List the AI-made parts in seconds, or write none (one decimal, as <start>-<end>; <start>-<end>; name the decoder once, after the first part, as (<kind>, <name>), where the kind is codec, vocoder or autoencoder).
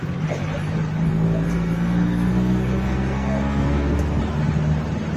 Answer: 1.1-4.2 (codec, SNAC)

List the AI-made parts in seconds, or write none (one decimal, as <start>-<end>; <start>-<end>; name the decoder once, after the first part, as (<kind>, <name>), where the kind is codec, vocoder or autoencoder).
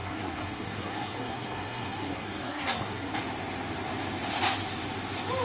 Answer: 0.0-3.2 (codec, SNAC)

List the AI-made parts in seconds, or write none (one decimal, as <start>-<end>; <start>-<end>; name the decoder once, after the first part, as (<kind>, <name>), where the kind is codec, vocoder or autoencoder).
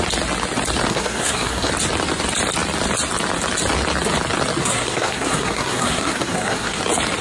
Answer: 0.9-1.7 (codec, SNAC); 4.6-6.8